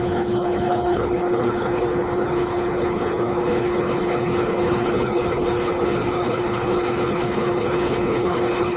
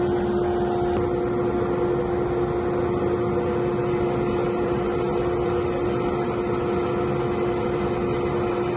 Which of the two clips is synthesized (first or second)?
first